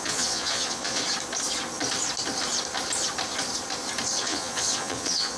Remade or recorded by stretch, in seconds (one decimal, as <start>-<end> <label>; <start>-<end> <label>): 0.0-1.0 remade; 1.0-4.2 recorded; 4.2-5.4 remade